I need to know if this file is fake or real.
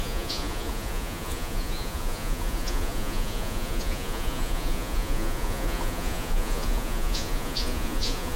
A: fake